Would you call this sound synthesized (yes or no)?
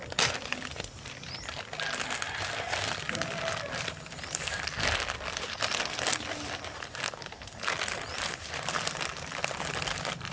no